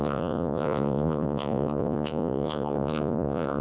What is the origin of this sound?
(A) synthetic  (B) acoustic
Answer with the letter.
A